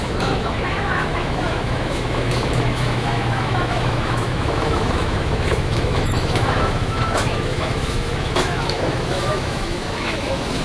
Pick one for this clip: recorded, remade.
remade